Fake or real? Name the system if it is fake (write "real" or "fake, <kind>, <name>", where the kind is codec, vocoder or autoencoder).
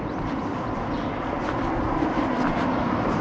real